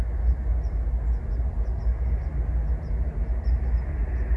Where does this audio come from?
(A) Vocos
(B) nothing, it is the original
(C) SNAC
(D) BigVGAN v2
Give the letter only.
B